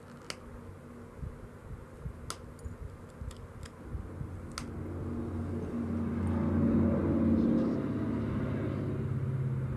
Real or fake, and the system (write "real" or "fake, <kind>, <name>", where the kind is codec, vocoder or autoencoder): real